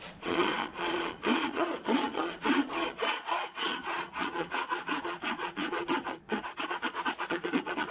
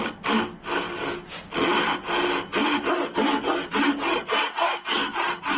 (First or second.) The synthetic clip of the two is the first